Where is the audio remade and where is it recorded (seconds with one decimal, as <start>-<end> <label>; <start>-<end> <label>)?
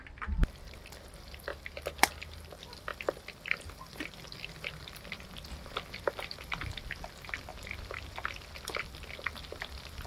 0.0-0.4 remade; 0.4-1.1 recorded; 1.1-1.5 remade; 1.5-2.0 recorded; 2.0-7.5 remade; 7.5-8.8 recorded; 8.8-10.1 remade